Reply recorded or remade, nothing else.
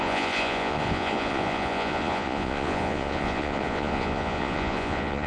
remade